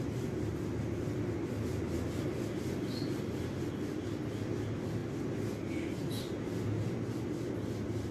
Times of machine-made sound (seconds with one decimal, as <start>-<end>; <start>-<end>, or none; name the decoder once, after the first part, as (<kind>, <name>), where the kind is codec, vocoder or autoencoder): none